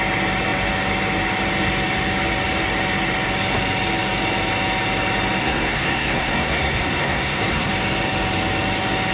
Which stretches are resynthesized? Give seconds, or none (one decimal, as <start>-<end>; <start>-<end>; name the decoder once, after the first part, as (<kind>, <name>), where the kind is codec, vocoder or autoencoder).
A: 5.4-7.7 (codec, SNAC)